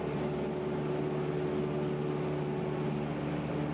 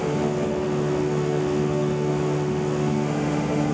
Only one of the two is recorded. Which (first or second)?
first